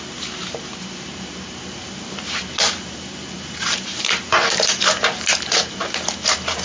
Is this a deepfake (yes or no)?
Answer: yes